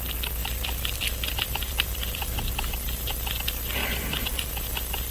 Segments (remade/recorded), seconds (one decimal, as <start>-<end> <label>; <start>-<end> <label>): 0.0-0.4 recorded; 0.4-2.7 remade; 2.7-3.8 recorded; 3.8-4.5 remade; 4.5-5.1 recorded